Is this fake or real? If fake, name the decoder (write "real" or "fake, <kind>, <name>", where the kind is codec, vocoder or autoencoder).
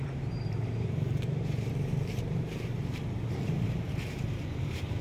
fake, vocoder, BigVGAN v2